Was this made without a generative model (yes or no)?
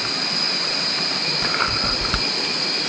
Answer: yes